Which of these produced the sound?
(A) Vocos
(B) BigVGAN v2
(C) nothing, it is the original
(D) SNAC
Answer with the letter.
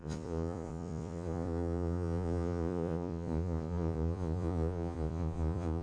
A